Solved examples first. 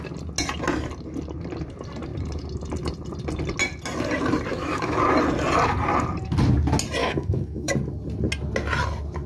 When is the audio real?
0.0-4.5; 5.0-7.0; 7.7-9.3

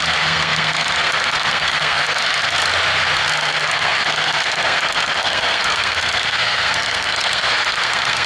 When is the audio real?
2.6-3.3

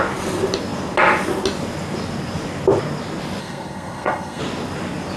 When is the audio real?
0.0-3.4; 4.4-5.2

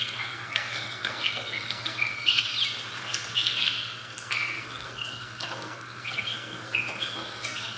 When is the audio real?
2.5-3.0

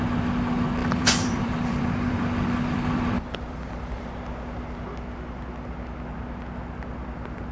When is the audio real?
0.0-0.8; 4.1-7.5

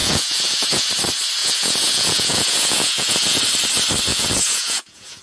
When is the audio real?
0.9-1.4; 3.4-4.1

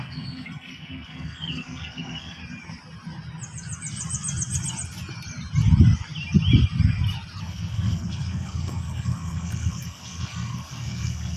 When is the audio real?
2.4-7.4

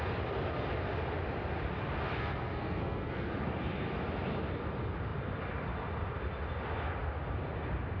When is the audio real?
0.0-2.2; 3.3-8.0